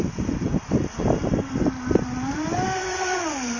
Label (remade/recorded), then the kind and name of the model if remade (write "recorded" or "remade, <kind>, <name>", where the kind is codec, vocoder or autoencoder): recorded